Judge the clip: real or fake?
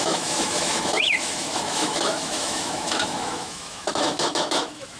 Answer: fake